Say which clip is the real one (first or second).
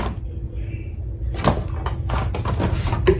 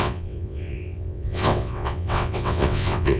first